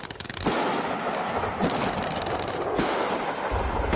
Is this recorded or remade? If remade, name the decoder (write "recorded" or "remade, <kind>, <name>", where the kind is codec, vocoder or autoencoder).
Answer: recorded